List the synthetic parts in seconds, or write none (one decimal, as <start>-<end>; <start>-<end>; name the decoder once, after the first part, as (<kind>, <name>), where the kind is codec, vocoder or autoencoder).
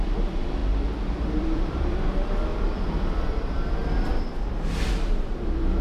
0.0-0.6 (vocoder, BigVGAN v2); 1.4-2.5; 3.2-5.8